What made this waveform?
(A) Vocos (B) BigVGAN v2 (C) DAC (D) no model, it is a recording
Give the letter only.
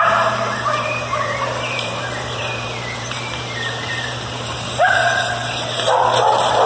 B